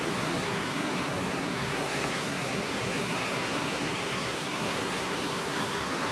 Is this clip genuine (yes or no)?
no